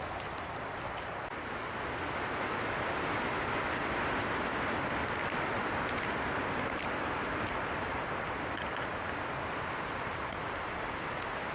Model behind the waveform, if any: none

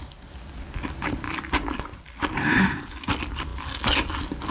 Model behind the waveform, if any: none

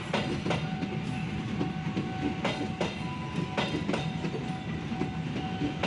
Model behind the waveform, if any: none